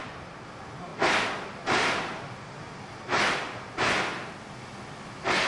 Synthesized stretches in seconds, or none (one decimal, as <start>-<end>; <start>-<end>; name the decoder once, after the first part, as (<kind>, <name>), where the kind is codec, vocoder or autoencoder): none